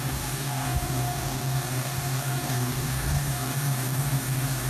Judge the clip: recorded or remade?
remade